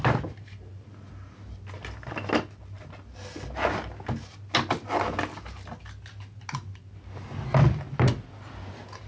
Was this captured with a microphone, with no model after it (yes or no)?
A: yes